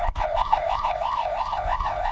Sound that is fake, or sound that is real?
fake